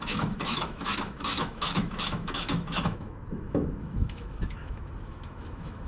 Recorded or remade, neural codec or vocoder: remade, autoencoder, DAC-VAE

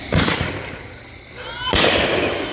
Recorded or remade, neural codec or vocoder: recorded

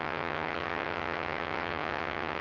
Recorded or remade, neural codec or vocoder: remade, vocoder, HiFi-GAN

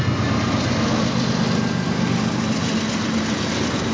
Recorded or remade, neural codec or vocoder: recorded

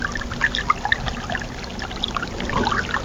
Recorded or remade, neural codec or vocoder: recorded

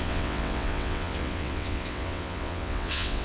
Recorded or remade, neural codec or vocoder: remade, vocoder, WaveNeXt